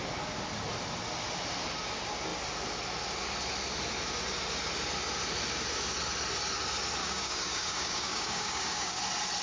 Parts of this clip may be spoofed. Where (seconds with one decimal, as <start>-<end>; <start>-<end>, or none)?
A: 7.0-9.0